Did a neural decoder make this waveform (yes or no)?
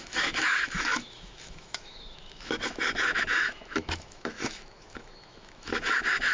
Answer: yes